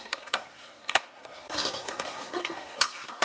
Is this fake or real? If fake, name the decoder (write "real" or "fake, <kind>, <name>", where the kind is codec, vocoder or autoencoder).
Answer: fake, codec, SNAC